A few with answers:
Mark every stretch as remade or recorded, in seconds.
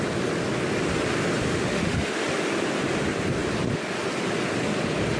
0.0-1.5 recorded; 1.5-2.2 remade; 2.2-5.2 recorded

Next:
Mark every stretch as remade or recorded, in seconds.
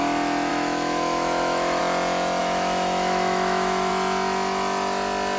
0.0-0.5 recorded; 0.5-1.8 remade; 1.8-2.4 recorded; 2.4-3.9 remade; 3.9-5.4 recorded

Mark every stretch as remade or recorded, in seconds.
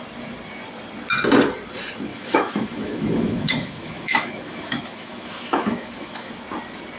0.0-2.1 recorded; 2.1-6.3 remade; 6.3-7.0 recorded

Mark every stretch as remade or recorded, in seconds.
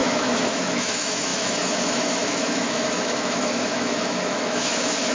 0.0-5.1 remade